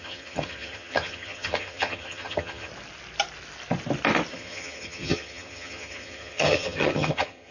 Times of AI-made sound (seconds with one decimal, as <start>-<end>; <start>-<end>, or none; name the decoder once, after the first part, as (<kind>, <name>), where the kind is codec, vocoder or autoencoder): 0.0-2.7 (vocoder, HiFi-GAN); 4.3-7.5